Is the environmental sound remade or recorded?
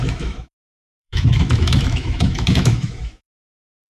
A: remade